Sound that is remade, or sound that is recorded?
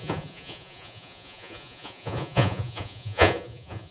remade